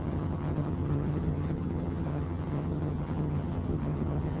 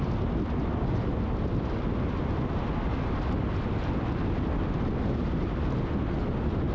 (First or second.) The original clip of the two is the second